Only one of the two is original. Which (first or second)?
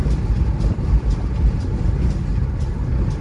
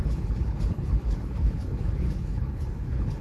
first